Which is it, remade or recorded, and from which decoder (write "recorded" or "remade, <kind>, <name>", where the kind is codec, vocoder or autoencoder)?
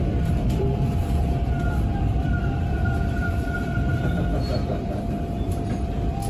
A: remade, vocoder, BigVGAN v2